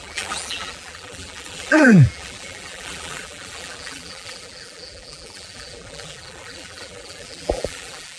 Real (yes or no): no